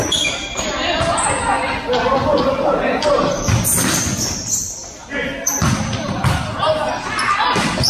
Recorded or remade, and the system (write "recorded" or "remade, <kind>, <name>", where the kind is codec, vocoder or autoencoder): recorded